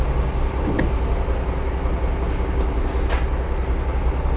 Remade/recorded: recorded